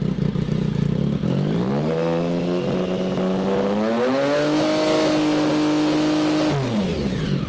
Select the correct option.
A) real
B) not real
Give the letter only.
A